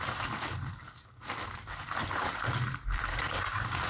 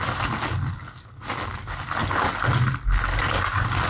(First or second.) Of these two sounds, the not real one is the first